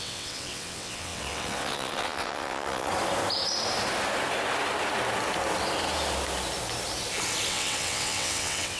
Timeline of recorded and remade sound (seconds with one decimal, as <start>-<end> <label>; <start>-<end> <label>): 0.0-2.9 remade; 2.9-7.5 recorded; 7.5-8.8 remade